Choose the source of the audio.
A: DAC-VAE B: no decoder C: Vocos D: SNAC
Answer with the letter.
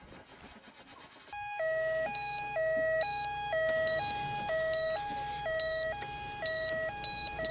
B